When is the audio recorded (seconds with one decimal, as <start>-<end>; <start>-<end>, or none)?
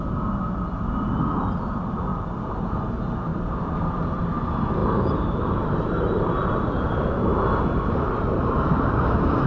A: 0.0-2.1; 2.8-3.3; 4.2-4.8